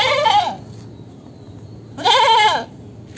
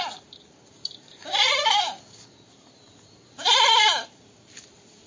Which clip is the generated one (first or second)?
second